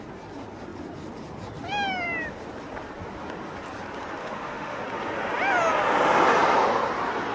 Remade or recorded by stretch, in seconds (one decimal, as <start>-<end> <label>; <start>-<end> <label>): 0.0-4.2 recorded; 4.2-4.8 remade; 4.8-7.3 recorded